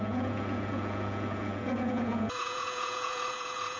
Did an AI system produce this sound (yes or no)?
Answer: yes